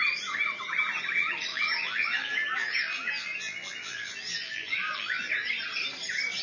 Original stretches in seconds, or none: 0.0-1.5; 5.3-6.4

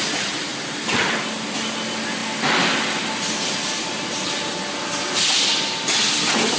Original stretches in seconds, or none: 0.0-6.6

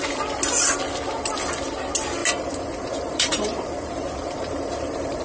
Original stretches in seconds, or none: 0.0-2.2

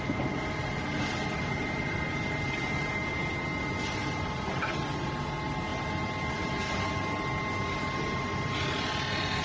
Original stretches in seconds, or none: 0.0-9.4

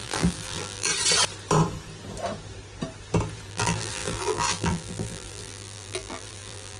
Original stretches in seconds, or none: 0.9-3.5

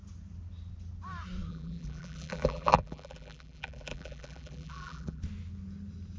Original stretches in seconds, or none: 0.0-1.5; 5.2-6.2